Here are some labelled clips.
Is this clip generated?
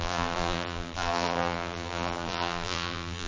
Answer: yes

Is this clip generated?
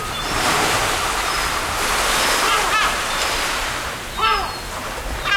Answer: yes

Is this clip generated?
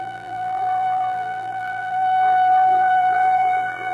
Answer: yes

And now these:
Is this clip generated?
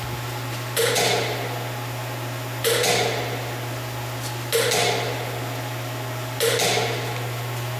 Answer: no